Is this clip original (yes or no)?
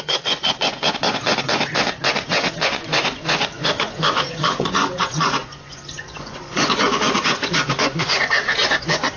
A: no